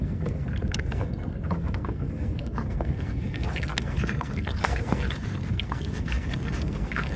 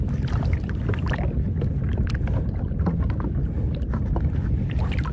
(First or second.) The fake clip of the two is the first